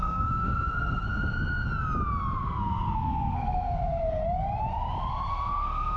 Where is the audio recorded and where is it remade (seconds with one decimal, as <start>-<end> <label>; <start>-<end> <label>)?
0.0-1.1 remade; 1.1-2.4 recorded; 2.4-4.2 remade; 4.2-5.3 recorded; 5.3-6.0 remade